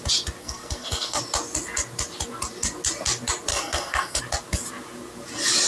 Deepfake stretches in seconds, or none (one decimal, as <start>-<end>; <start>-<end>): 0.4-1.2; 3.5-4.2